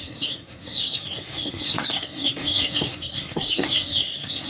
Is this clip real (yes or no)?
no